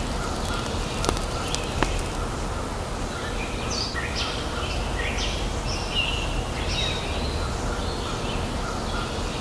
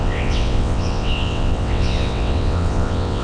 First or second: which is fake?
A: second